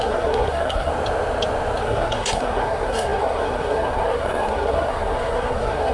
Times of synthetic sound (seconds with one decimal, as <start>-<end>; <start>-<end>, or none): 0.0-0.9; 1.8-5.9